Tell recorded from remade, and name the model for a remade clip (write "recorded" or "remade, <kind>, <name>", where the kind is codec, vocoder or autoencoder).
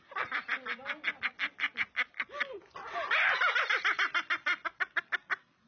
recorded